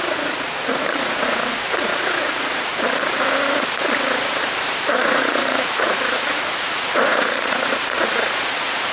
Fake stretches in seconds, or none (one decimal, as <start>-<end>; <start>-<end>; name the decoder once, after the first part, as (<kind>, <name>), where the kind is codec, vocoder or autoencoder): 0.0-2.7 (vocoder, Vocos); 5.0-8.9